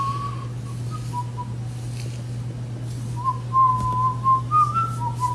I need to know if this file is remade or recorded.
recorded